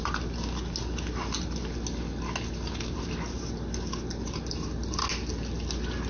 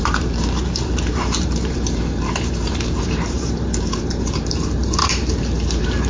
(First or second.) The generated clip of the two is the second